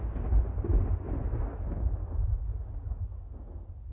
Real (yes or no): yes